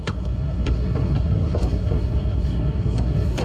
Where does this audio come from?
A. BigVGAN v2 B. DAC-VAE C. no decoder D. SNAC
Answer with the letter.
D